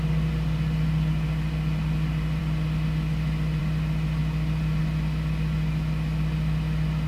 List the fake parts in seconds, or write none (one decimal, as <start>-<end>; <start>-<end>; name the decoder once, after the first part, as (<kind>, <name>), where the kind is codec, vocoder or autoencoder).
none